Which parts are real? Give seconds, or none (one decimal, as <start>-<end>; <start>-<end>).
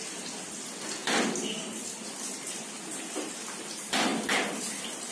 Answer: 0.0-5.1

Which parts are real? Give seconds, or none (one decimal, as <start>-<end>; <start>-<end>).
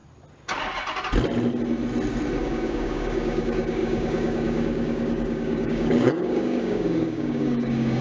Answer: 0.0-2.4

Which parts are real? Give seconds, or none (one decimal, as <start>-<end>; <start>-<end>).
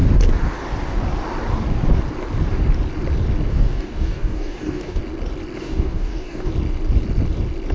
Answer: 0.0-3.5; 5.0-5.6; 6.5-7.7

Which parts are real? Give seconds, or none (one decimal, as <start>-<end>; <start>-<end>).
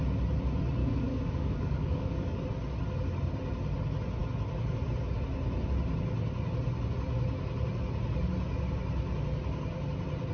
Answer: 0.0-0.8; 2.4-10.3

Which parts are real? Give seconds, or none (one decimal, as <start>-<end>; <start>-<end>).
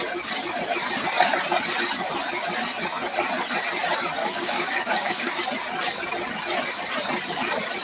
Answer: 0.0-4.2; 5.3-7.8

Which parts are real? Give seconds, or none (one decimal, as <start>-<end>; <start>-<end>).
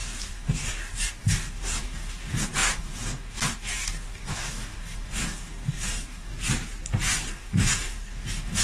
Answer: 6.3-7.3